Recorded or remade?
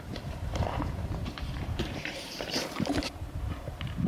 remade